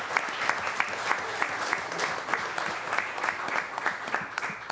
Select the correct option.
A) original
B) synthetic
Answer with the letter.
A